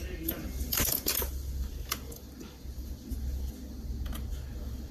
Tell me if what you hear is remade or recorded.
recorded